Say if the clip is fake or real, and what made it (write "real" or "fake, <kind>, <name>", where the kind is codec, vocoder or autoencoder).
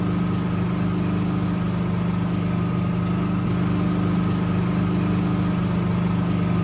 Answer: real